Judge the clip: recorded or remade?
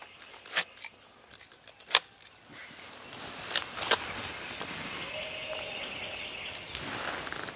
recorded